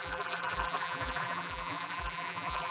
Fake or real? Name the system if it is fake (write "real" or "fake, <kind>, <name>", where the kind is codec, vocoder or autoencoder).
fake, vocoder, BigVGAN v2